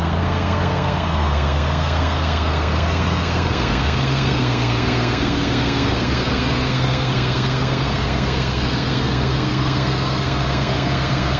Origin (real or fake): fake